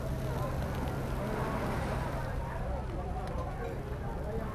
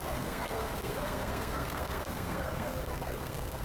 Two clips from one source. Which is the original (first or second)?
first